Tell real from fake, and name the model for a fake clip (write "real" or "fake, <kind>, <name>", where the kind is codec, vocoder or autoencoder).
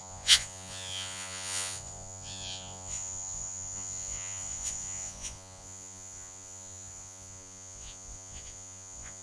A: fake, vocoder, Vocos